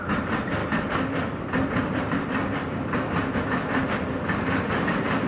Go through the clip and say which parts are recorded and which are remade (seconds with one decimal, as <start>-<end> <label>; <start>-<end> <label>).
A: 0.0-5.3 recorded